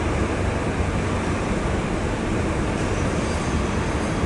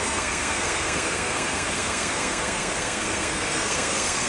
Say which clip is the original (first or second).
first